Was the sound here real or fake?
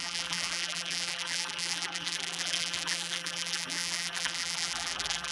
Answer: fake